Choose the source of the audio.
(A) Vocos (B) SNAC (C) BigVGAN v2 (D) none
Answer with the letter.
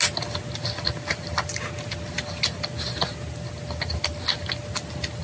D